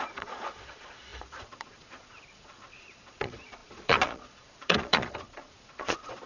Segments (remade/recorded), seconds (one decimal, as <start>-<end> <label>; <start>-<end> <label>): 0.0-6.3 remade